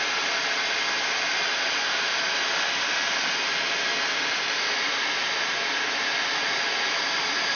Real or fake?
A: real